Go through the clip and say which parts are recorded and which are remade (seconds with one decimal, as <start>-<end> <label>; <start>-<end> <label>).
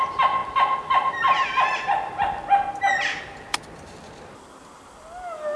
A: 0.0-5.6 recorded